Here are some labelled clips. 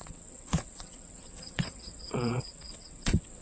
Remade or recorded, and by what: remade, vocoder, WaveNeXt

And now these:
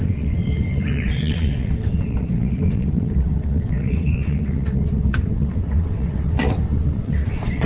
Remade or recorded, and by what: remade, vocoder, WaveNeXt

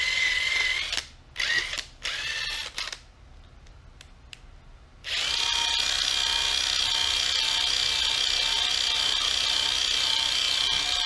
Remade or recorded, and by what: recorded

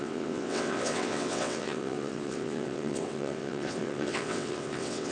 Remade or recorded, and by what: remade, vocoder, WaveNeXt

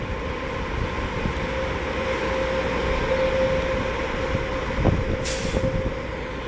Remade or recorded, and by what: recorded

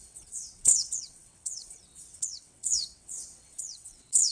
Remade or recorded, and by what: remade, vocoder, WaveNeXt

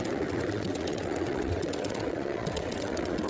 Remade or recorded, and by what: remade, vocoder, WaveNeXt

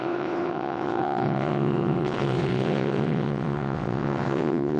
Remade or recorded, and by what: remade, vocoder, WaveNeXt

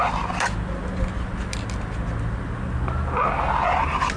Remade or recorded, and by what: recorded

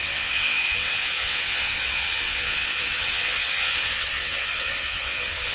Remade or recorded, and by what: remade, vocoder, WaveNeXt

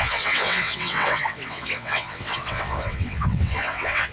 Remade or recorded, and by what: remade, vocoder, WaveNeXt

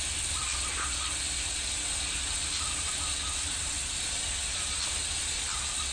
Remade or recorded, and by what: recorded